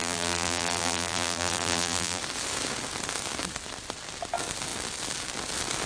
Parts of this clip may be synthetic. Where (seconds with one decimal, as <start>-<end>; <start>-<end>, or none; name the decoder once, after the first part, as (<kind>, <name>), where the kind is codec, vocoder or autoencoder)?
0.0-2.2 (vocoder, BigVGAN v2)